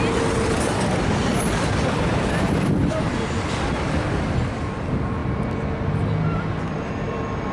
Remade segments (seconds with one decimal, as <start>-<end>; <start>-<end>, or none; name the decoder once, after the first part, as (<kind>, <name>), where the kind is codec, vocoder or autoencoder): 1.2-3.1 (vocoder, BigVGAN v2)